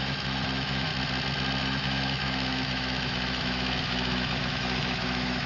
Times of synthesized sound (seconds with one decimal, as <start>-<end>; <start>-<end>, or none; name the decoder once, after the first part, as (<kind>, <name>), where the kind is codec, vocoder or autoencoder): 0.0-0.9 (autoencoder, DAC-VAE); 1.6-5.5